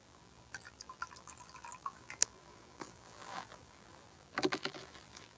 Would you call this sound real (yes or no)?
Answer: no